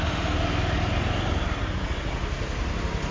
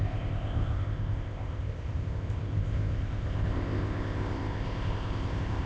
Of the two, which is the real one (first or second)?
first